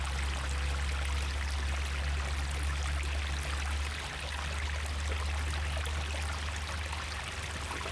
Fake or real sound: real